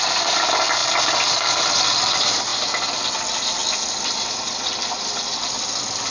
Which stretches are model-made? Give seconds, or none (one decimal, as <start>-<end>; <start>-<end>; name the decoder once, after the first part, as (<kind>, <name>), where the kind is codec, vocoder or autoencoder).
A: none

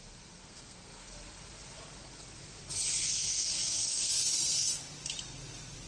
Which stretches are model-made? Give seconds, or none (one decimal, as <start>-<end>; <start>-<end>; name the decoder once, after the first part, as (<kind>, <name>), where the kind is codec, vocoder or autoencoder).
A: 0.4-1.0 (codec, SNAC); 3.0-4.8

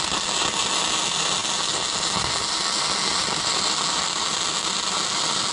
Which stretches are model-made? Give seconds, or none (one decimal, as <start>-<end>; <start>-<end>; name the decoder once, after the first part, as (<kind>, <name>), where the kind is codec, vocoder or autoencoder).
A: none

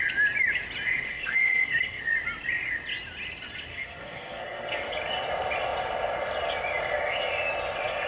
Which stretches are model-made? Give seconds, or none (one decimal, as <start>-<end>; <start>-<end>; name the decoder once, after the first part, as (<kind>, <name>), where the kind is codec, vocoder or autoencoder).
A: 1.1-2.0 (codec, SNAC); 3.7-4.9

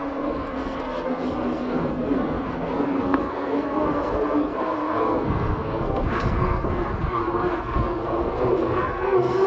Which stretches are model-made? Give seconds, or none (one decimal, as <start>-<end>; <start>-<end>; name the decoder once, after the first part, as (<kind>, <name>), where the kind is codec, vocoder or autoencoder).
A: 0.0-9.5 (codec, SNAC)